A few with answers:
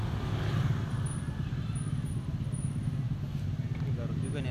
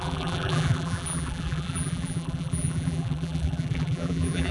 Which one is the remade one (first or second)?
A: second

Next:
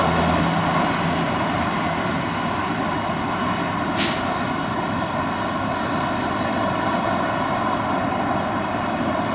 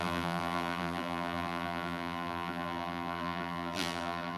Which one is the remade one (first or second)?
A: second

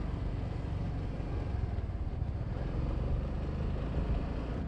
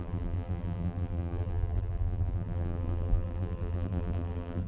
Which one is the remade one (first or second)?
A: second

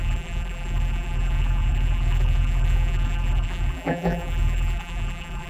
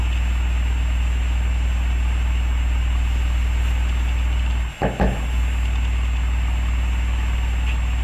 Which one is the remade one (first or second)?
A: first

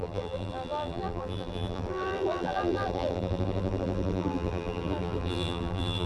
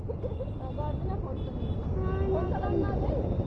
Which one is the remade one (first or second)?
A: first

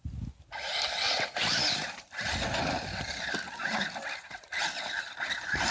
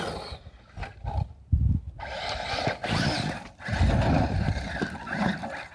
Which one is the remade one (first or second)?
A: second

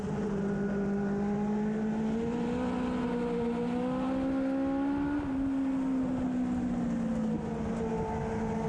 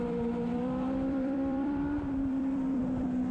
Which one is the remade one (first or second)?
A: second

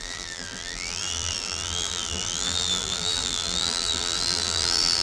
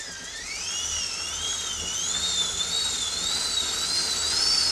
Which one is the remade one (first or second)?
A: first